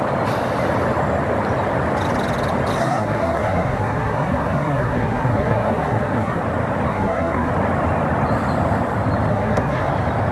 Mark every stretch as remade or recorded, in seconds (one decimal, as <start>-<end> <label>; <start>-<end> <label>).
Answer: 0.0-2.8 recorded; 2.8-6.4 remade; 6.4-6.9 recorded; 6.9-7.5 remade; 7.5-9.3 recorded; 9.3-9.9 remade; 9.9-10.3 recorded